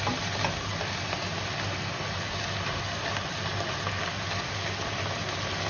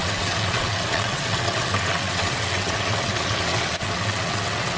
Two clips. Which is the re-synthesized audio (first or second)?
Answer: second